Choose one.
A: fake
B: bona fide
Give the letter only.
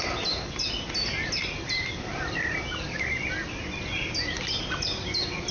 B